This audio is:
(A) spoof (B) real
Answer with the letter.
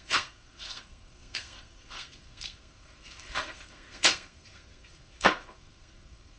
A